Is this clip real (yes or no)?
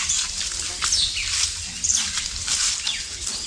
yes